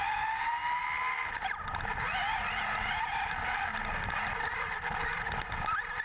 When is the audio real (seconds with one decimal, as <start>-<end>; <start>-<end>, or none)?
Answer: 0.0-6.0